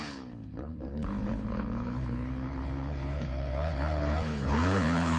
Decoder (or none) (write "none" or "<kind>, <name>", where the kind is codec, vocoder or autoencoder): codec, HILCodec